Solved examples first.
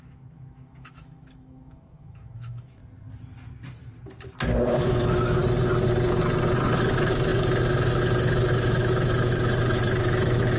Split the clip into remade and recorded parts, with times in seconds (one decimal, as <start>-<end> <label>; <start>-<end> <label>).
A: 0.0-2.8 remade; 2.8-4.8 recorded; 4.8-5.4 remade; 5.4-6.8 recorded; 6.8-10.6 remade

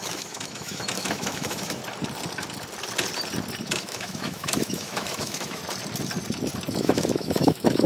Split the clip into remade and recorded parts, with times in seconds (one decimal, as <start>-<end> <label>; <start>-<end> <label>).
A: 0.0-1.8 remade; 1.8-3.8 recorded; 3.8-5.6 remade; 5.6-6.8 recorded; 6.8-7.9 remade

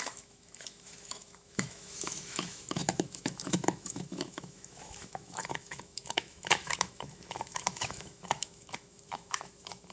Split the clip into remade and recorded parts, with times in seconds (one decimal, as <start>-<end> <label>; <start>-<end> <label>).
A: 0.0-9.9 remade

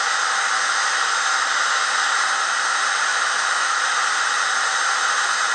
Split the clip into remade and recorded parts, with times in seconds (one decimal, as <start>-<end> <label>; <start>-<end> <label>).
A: 0.0-3.1 recorded; 3.1-3.8 remade; 3.8-5.5 recorded